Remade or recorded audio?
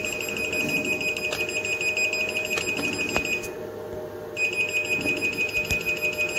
recorded